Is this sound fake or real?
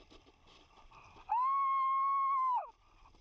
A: real